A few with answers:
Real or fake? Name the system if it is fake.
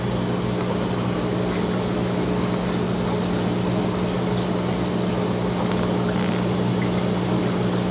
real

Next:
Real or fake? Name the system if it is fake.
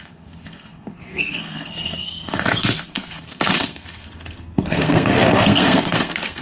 fake, codec, SNAC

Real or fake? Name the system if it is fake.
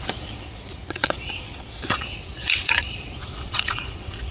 fake, vocoder, Vocos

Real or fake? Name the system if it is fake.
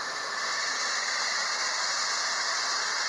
real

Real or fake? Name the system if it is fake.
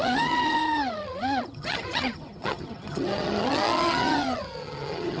fake, vocoder, HiFi-GAN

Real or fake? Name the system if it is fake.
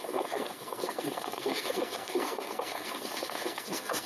fake, codec, SNAC